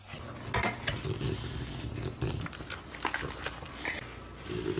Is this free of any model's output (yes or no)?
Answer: yes